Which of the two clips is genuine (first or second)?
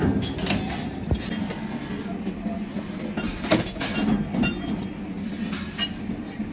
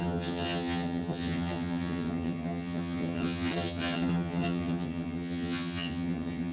first